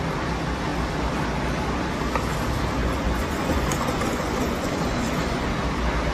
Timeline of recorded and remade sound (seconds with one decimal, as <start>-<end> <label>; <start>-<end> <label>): 0.0-2.8 recorded; 2.8-5.5 remade; 5.5-6.1 recorded